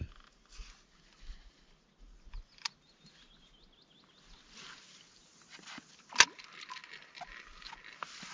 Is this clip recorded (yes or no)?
yes